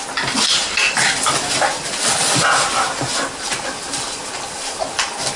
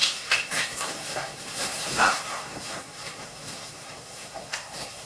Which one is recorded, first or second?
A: first